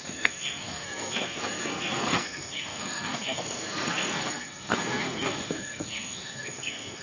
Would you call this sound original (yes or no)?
no